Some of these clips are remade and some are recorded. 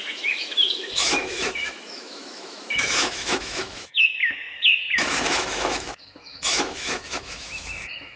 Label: remade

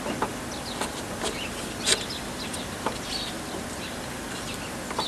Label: recorded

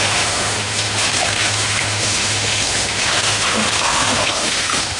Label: remade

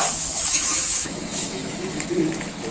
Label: remade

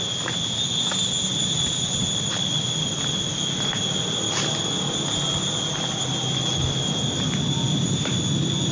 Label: recorded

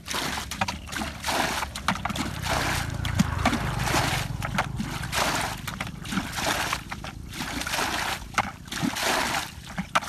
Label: recorded